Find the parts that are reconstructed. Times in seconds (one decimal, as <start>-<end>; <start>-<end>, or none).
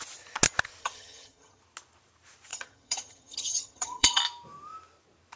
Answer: 0.8-1.6; 2.5-4.2